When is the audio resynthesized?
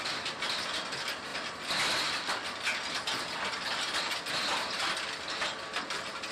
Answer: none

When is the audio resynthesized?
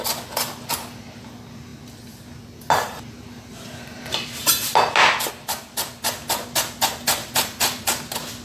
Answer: 7.2-7.9 (vocoder, BigVGAN v2)